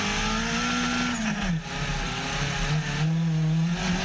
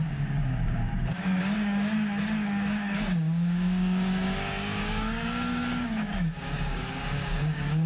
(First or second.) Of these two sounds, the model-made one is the second